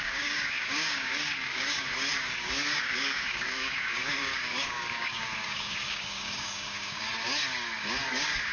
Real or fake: fake